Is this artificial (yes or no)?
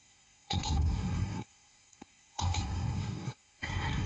yes